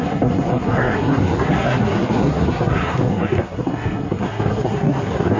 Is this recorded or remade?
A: remade